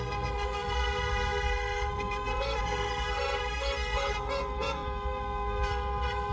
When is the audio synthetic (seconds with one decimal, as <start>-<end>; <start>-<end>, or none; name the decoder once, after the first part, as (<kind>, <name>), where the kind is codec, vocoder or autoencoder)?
0.0-6.3 (codec, SNAC)